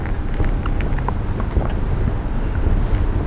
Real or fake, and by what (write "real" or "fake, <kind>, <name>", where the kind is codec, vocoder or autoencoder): real